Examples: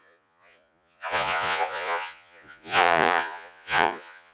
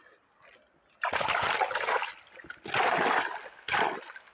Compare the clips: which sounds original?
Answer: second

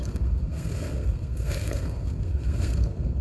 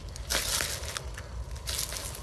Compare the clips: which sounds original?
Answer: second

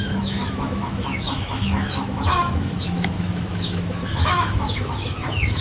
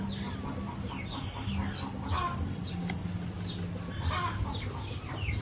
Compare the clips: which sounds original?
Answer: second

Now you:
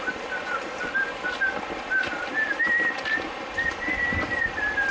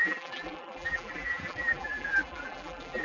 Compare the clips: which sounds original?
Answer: first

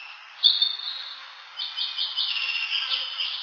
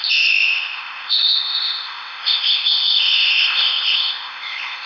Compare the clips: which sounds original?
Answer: first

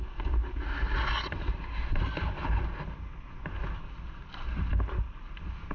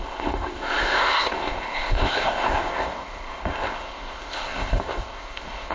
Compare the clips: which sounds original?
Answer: first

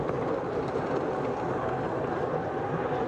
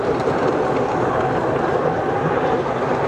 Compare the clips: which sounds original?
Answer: first